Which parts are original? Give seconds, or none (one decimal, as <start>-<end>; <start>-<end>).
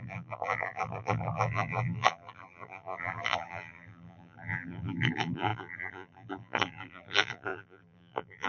none